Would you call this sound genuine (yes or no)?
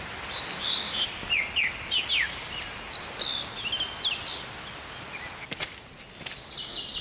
yes